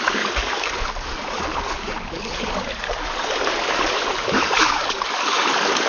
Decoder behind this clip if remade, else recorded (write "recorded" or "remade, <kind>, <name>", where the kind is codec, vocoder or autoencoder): remade, codec, DAC